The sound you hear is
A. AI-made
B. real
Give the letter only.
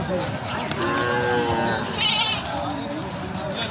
B